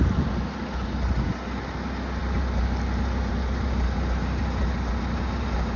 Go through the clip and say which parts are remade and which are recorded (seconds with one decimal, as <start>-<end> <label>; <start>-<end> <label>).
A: 0.0-5.8 recorded